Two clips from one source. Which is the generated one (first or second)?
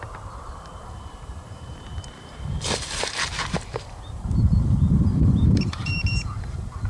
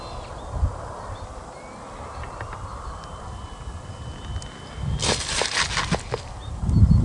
first